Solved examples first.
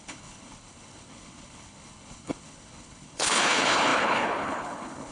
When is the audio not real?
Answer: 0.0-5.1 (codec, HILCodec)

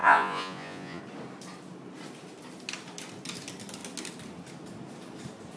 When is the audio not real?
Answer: 0.0-1.0 (vocoder, Vocos)

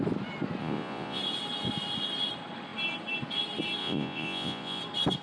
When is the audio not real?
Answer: 0.6-1.2 (vocoder, Vocos); 3.8-4.8

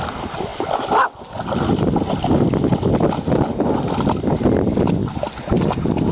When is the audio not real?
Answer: none

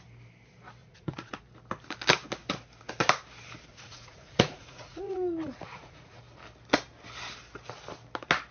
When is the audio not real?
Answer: 0.8-1.4 (vocoder, Vocos); 3.7-6.2

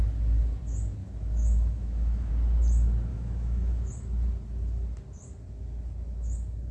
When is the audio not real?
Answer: 1.0-2.3 (autoencoder, DAC-VAE); 3.1-3.9